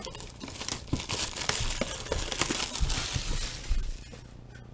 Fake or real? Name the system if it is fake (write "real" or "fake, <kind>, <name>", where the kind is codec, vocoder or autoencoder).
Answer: real